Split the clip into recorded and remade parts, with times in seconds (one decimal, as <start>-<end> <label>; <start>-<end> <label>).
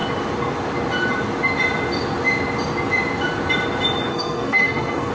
0.0-4.1 recorded; 4.1-5.1 remade